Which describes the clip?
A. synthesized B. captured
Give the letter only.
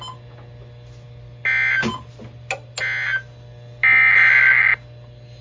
B